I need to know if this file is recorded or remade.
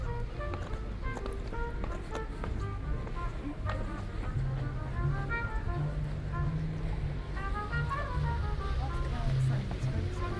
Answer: recorded